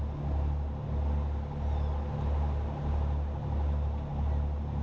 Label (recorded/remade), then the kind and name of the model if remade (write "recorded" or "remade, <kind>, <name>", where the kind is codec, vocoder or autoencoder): recorded